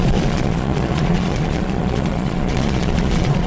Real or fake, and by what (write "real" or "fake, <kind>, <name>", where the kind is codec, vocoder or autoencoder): fake, vocoder, Vocos